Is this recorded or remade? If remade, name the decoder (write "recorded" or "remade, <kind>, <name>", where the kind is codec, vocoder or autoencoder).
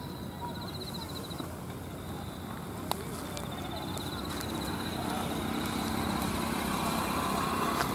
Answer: recorded